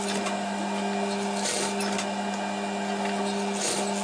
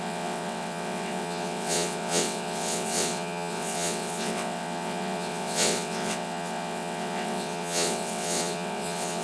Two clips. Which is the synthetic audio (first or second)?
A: second